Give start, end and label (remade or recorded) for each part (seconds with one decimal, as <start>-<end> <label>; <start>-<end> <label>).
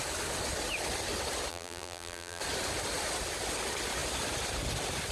0.0-1.5 recorded; 1.5-2.4 remade; 2.4-5.1 recorded